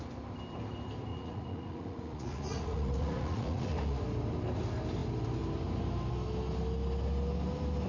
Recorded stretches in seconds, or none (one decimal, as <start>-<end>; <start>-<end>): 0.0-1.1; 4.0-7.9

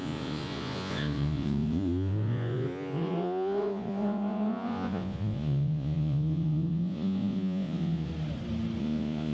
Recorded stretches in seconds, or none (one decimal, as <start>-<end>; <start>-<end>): 8.1-8.8

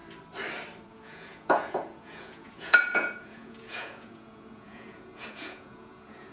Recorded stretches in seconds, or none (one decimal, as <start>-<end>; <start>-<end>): 0.0-0.9